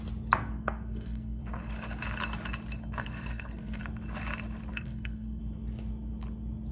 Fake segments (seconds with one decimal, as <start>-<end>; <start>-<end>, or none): 0.4-1.4; 3.0-3.8; 4.7-5.4